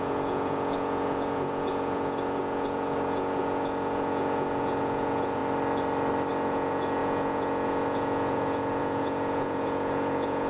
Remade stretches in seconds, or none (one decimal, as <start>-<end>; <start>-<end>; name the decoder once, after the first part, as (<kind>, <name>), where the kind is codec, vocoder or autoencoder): 0.0-5.4 (vocoder, Vocos); 6.3-10.5